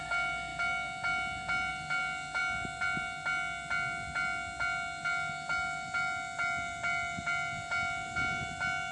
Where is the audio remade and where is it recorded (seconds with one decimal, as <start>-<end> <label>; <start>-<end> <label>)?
0.0-8.9 recorded